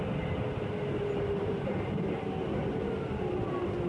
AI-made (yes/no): no